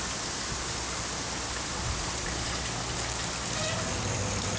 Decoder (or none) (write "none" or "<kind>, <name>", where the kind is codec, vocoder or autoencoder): none